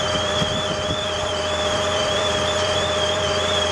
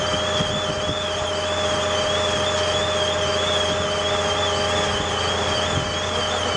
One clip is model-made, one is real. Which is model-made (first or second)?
first